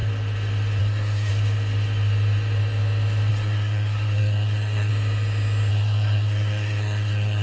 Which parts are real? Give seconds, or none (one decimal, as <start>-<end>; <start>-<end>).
0.0-0.8; 1.3-3.3; 4.9-5.7